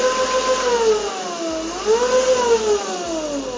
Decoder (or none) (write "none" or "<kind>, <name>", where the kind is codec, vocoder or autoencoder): none